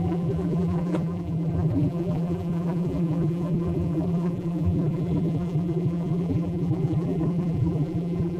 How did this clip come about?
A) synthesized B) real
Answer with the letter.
A